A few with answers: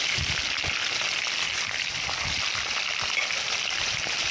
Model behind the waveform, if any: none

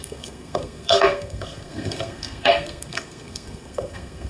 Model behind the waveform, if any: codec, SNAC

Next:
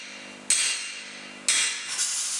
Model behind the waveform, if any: none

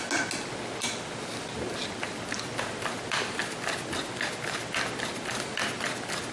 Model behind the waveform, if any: none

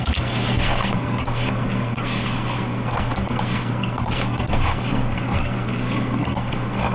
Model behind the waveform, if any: codec, SNAC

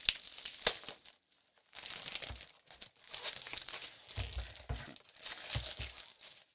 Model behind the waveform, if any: none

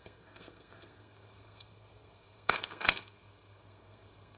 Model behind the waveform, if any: codec, SNAC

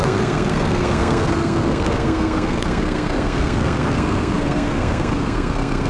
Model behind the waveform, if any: codec, SNAC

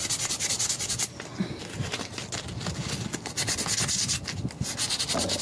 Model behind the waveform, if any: none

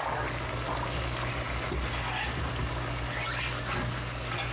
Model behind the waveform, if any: none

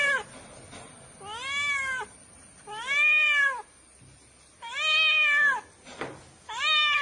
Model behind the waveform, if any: none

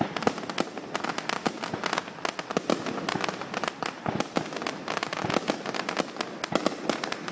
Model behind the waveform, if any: none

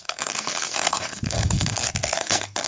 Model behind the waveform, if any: codec, SNAC